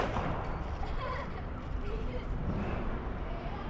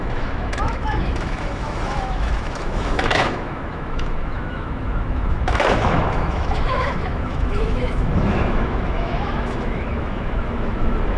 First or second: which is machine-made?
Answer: second